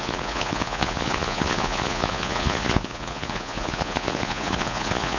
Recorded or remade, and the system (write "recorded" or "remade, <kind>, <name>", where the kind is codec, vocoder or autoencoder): remade, vocoder, Vocos